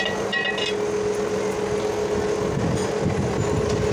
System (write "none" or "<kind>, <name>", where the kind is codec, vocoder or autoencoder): none